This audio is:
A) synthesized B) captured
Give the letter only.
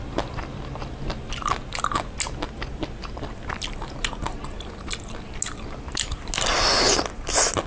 B